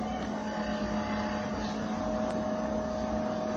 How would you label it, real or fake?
real